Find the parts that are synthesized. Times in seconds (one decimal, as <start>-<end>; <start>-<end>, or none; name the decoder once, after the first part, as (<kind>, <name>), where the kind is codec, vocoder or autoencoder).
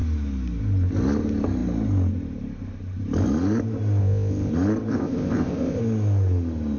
4.0-4.5 (codec, ZipCodec); 4.9-5.8